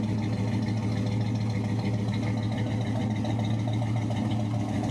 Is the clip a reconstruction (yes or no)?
no